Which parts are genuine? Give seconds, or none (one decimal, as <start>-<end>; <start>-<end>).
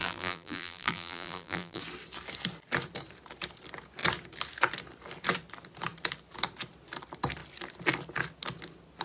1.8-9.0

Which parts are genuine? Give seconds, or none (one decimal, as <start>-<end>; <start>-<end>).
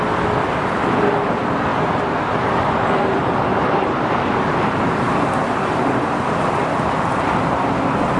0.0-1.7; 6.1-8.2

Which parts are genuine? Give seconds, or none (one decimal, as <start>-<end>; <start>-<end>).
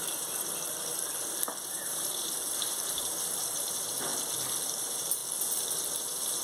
0.9-1.6; 4.1-4.8; 5.2-5.9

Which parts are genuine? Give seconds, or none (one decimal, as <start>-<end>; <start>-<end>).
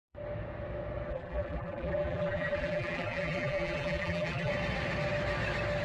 0.0-1.1; 4.5-5.8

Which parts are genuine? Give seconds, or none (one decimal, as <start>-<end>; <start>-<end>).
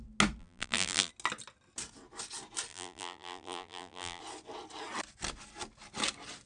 0.0-0.4; 1.1-2.7; 4.2-6.5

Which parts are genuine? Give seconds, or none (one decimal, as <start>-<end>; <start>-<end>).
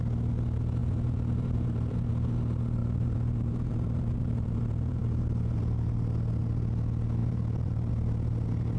0.0-0.8; 2.1-2.8; 5.6-7.2; 7.9-8.8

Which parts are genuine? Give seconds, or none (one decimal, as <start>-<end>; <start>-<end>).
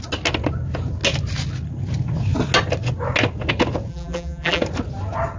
0.0-3.9; 4.6-5.4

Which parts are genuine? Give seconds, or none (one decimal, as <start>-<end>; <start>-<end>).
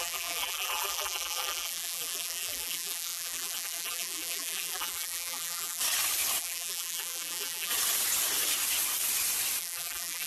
5.8-6.4; 7.7-9.6